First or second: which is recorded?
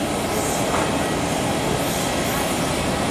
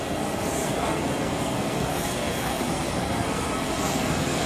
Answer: first